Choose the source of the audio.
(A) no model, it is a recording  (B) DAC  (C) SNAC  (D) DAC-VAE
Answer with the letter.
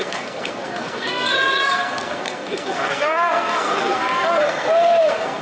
C